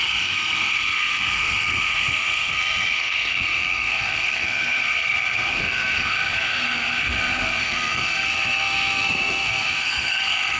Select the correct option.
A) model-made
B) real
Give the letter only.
A